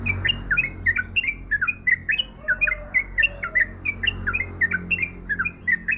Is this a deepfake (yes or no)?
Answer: no